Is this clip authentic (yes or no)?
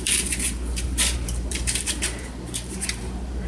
no